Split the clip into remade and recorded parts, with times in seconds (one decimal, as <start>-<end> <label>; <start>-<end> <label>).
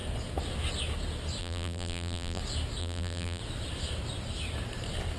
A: 0.0-1.4 recorded; 1.4-2.4 remade; 2.4-2.8 recorded; 2.8-3.4 remade; 3.4-5.2 recorded